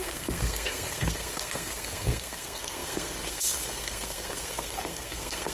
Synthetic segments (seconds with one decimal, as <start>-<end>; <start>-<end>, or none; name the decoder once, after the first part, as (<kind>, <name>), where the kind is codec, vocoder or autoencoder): 0.0-5.5 (codec, SNAC)

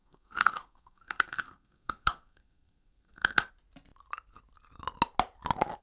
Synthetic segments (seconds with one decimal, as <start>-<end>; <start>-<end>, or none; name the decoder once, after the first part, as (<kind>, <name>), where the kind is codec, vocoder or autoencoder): 0.0-3.5 (codec, SNAC)

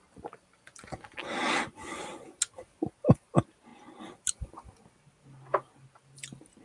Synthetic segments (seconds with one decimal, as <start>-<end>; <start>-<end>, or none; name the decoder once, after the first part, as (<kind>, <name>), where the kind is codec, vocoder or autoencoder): none

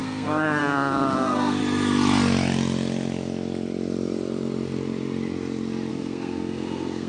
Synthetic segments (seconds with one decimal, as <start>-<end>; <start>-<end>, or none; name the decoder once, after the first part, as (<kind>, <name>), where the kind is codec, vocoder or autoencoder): 0.0-1.6 (codec, SNAC); 5.9-7.1

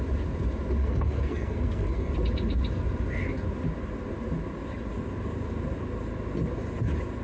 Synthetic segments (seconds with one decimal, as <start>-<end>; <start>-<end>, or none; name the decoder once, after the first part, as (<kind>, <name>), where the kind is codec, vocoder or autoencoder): 0.8-2.1 (codec, SNAC)